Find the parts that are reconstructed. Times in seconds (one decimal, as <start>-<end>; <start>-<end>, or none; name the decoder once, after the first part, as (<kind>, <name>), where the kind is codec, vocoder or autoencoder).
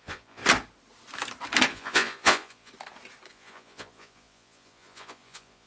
0.0-0.4 (vocoder, Vocos); 1.7-2.7; 3.3-5.7